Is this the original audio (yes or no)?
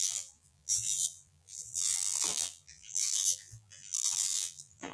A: no